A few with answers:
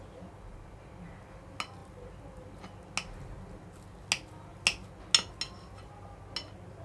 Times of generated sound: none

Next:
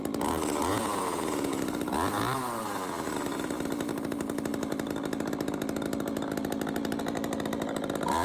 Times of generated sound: 0.7-1.6 (vocoder, Vocos)

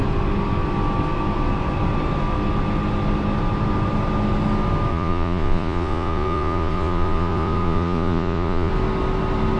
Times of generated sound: 4.9-8.7 (vocoder, Vocos)